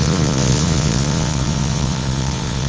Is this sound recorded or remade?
remade